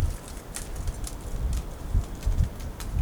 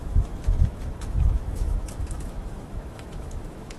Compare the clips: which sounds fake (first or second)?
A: second